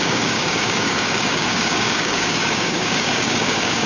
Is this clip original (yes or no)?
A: no